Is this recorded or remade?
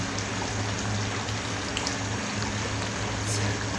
recorded